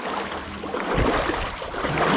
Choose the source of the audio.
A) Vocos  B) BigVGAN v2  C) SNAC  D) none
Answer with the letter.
B